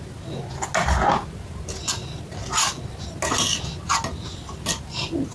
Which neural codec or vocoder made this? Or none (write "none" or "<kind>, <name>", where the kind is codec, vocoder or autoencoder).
none